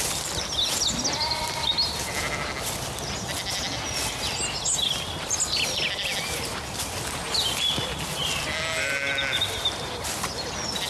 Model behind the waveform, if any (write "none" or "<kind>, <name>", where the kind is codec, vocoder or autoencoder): none